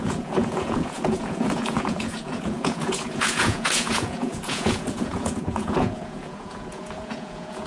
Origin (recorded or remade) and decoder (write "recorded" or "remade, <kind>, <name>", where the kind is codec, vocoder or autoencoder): remade, vocoder, Vocos